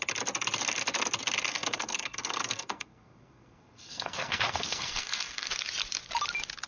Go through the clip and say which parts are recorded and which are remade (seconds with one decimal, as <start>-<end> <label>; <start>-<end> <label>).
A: 0.0-1.5 recorded; 1.5-5.5 remade; 5.5-6.7 recorded

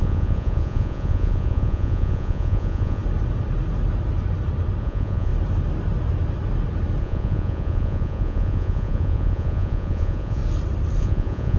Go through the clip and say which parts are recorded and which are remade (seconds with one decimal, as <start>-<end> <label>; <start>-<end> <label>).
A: 0.0-3.0 remade; 3.0-4.8 recorded; 4.8-5.3 remade; 5.3-7.0 recorded; 7.0-10.4 remade; 10.4-11.0 recorded; 11.0-11.6 remade

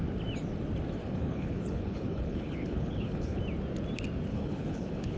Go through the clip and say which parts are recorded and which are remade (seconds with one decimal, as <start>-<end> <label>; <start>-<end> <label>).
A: 0.0-1.0 recorded; 1.0-3.4 remade; 3.4-4.3 recorded; 4.3-5.2 remade

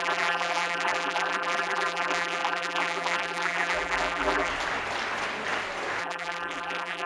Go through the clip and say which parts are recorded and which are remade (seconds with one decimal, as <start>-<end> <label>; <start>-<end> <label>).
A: 0.0-4.5 remade; 4.5-6.0 recorded; 6.0-7.1 remade

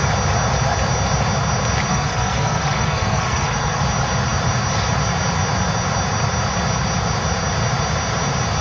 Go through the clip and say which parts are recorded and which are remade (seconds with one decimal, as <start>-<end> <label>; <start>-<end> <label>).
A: 0.0-1.9 recorded; 1.9-3.8 remade; 3.8-8.6 recorded

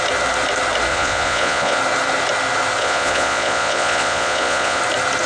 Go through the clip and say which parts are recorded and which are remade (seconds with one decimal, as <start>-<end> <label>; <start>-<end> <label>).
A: 0.0-0.9 recorded; 0.9-1.8 remade; 1.8-2.8 recorded; 2.8-4.8 remade; 4.8-5.3 recorded